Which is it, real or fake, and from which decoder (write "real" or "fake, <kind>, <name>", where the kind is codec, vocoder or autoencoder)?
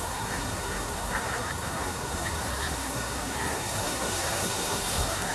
fake, codec, SNAC